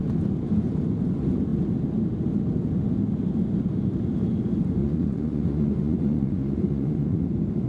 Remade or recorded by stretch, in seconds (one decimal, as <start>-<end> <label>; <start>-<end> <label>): 0.0-4.8 recorded; 4.8-7.2 remade; 7.2-7.7 recorded